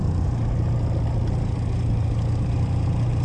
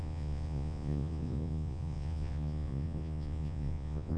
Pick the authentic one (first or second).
first